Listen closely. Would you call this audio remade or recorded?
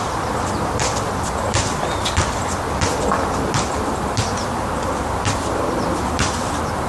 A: remade